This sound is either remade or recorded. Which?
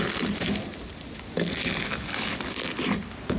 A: recorded